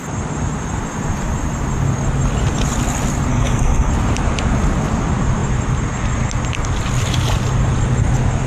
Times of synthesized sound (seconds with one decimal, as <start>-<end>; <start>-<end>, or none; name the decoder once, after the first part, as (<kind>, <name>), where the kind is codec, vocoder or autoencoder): 3.3-3.9 (codec, SNAC)